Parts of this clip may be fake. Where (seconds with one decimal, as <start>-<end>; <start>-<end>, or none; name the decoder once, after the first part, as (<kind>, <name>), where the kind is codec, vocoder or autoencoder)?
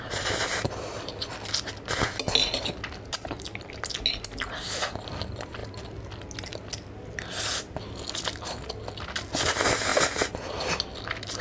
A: none